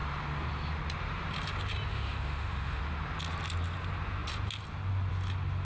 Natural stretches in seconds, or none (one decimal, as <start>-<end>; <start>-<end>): 0.0-1.9; 2.8-5.6